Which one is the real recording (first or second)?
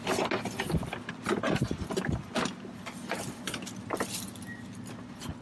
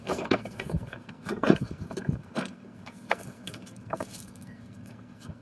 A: first